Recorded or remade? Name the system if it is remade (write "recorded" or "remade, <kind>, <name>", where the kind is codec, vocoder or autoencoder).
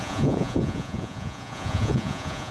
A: remade, vocoder, Vocos